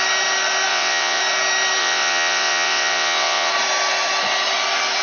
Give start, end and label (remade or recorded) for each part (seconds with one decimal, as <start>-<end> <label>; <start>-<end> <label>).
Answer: 0.0-0.7 recorded; 0.7-1.2 remade; 1.2-1.8 recorded; 1.8-3.5 remade; 3.5-5.0 recorded